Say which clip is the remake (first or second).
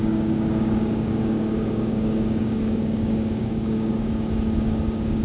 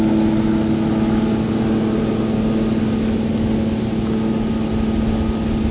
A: first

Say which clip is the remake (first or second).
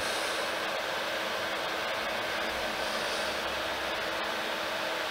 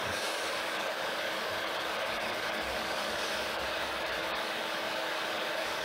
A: second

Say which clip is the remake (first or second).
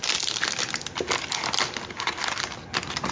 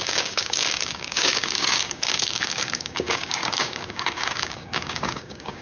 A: second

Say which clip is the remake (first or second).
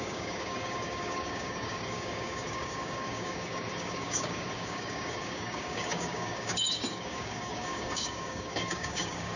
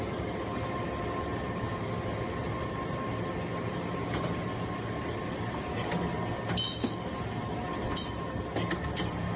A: first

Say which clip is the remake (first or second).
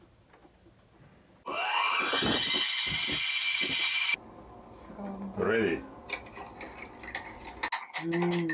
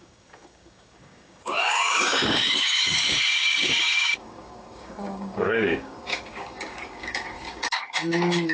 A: second